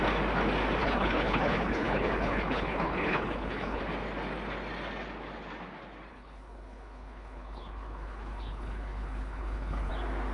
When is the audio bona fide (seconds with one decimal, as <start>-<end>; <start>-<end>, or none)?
0.0-0.8; 3.8-6.1; 9.9-10.3